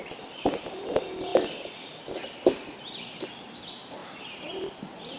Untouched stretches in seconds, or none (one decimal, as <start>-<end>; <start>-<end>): 0.0-5.2